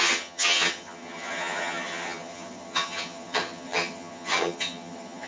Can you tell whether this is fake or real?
fake